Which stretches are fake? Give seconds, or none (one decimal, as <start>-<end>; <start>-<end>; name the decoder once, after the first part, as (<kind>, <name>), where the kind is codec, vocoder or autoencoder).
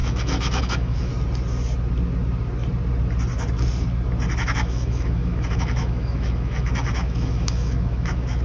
0.0-1.1 (autoencoder, DAC-VAE); 4.4-8.4